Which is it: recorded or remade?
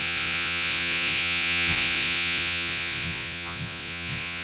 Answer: remade